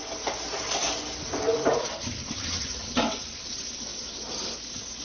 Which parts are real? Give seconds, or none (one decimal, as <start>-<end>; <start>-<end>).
0.0-2.2; 3.2-5.0